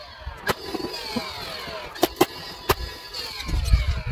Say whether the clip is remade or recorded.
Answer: recorded